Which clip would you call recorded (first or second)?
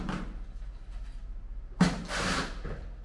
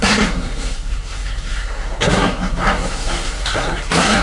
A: first